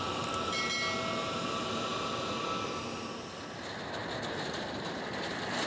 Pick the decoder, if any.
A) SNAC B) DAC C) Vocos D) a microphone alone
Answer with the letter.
D